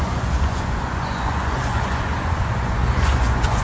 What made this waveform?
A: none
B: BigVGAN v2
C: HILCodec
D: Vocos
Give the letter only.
D